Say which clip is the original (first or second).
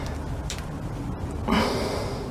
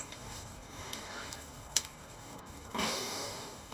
first